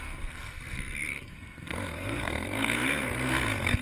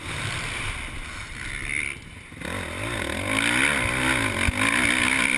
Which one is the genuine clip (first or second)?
second